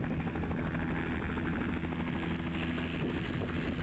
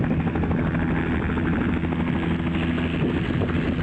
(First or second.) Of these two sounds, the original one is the first